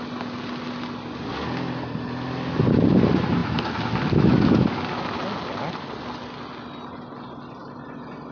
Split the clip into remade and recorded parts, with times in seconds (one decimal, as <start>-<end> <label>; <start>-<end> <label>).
0.0-8.3 recorded